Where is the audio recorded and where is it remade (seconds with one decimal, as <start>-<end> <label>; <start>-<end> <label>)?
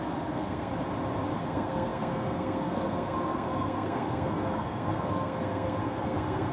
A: 0.0-0.7 remade; 0.7-1.4 recorded; 1.4-6.5 remade